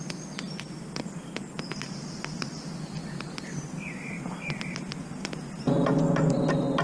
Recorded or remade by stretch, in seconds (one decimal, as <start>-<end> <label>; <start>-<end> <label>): 0.0-6.8 recorded